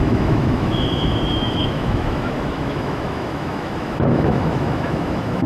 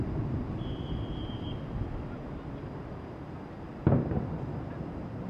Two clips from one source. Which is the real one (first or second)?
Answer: second